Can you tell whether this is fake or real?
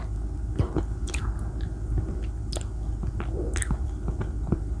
real